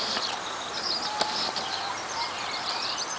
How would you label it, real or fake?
fake